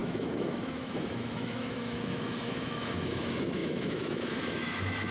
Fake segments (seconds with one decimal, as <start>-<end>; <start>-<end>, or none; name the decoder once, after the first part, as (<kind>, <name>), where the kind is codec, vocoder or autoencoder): 0.0-5.1 (autoencoder, DAC-VAE)